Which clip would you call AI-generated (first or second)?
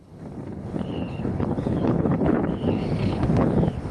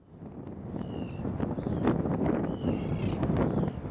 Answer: first